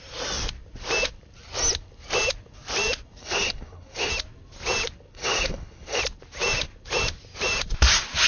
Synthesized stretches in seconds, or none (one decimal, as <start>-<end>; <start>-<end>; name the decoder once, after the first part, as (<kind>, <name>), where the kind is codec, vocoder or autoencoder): 3.2-4.1 (codec, HILCodec); 5.1-6.0